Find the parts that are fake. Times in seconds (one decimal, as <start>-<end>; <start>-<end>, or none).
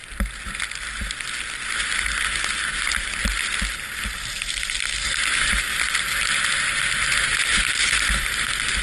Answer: none